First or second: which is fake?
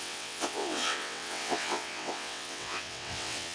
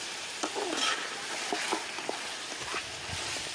first